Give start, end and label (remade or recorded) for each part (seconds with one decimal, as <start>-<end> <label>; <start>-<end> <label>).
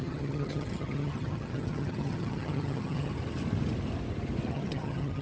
0.0-3.1 remade; 3.1-4.5 recorded; 4.5-5.2 remade